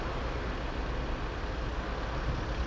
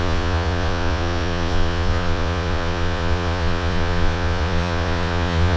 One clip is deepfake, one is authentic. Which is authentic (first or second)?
first